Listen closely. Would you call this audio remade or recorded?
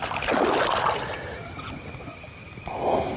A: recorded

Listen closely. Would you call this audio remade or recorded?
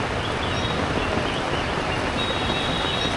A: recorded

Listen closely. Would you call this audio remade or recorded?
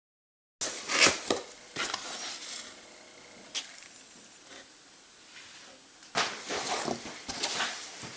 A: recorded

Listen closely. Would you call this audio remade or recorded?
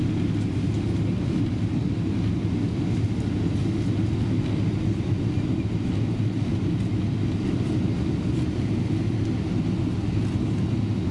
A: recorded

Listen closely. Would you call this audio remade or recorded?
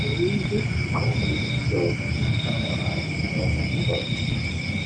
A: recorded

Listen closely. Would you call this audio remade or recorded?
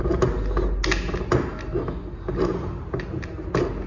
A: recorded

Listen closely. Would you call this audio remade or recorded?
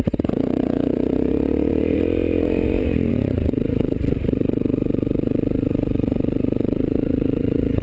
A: remade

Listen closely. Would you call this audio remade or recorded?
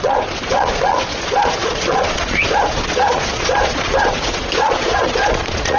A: remade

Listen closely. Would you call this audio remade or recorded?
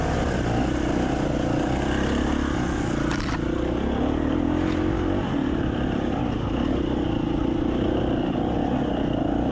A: recorded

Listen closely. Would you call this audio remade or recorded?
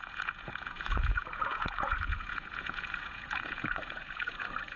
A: remade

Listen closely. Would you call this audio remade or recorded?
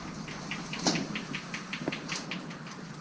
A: recorded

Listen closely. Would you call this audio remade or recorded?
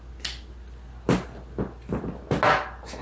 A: recorded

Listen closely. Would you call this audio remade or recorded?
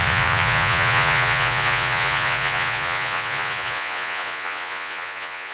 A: remade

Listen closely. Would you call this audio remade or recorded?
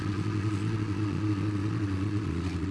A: remade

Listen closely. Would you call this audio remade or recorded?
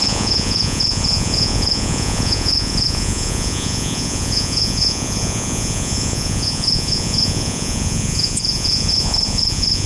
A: remade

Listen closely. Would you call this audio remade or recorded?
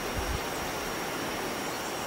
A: recorded